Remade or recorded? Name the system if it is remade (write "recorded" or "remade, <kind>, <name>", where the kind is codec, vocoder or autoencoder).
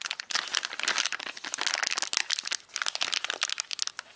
recorded